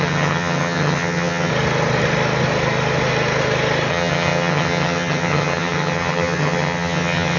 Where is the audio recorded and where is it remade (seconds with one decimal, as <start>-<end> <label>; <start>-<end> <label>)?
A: 0.0-1.5 remade; 1.5-3.9 recorded; 3.9-7.4 remade